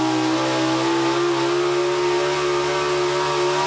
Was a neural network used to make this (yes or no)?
no